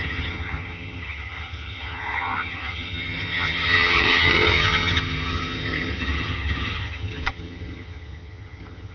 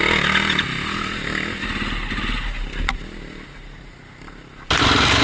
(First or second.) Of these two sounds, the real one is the second